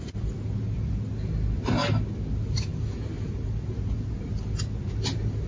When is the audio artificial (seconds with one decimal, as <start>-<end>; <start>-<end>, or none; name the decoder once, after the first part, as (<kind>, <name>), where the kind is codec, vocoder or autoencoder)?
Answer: none